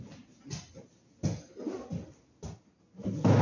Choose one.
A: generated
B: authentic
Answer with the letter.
B